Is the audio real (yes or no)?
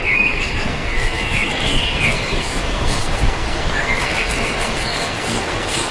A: no